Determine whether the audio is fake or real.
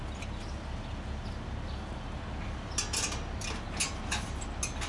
real